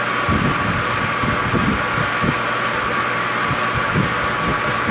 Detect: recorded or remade recorded